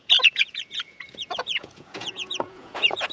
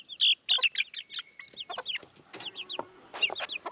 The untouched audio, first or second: second